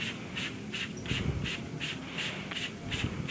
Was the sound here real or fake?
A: real